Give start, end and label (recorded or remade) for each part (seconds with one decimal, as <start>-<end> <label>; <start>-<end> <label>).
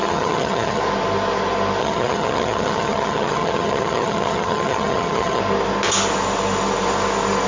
0.0-0.8 remade; 0.8-1.8 recorded; 1.8-5.4 remade; 5.4-7.5 recorded